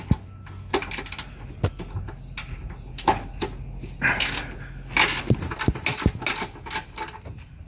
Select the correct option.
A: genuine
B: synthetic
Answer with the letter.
A